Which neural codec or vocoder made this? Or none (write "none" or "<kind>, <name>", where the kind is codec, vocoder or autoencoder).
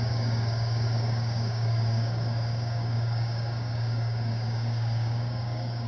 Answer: codec, DAC